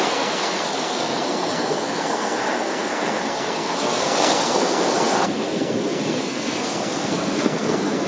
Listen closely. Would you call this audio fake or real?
fake